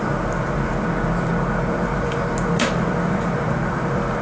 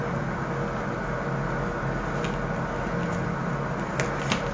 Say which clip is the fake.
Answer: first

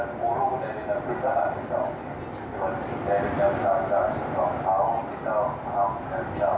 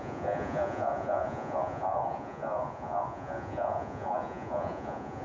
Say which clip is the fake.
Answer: second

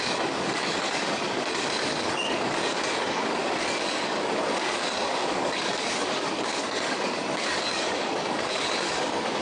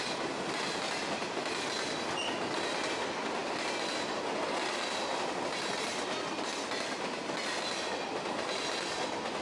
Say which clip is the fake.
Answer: first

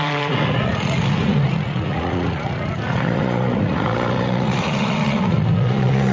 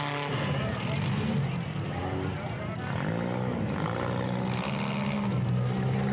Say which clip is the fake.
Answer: first